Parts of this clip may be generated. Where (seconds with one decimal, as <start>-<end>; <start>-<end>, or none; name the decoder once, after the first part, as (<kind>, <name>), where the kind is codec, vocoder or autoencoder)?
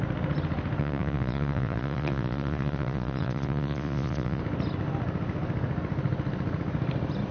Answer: 0.8-4.4 (vocoder, Vocos)